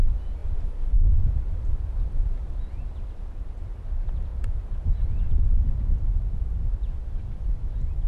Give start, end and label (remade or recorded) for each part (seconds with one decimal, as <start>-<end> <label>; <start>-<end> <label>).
0.0-0.4 recorded; 0.4-2.5 remade; 2.5-4.3 recorded; 4.3-5.6 remade; 5.6-8.1 recorded